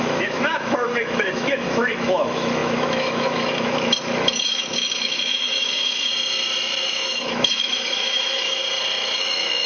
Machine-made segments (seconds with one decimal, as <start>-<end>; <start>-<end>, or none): 0.0-6.1; 6.8-8.6; 9.2-9.7